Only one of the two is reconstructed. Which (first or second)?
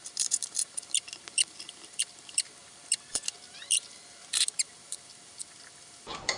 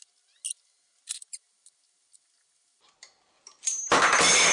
first